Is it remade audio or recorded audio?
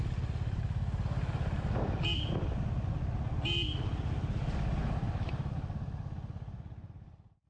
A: recorded